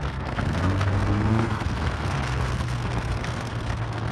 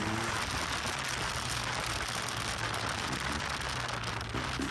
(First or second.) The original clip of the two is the second